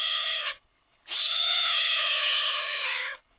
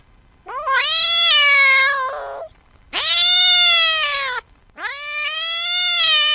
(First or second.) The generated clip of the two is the first